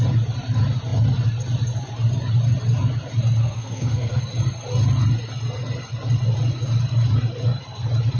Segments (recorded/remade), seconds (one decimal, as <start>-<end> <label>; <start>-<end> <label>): 0.0-3.4 recorded; 3.4-4.2 remade; 4.2-8.2 recorded